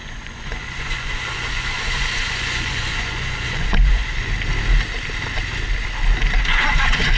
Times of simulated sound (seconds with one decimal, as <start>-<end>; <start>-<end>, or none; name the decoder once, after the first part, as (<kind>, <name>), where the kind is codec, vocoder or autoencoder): 0.0-4.3 (vocoder, Vocos); 6.5-7.2